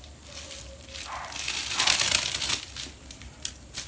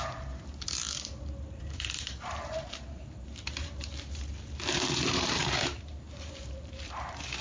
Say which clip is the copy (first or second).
second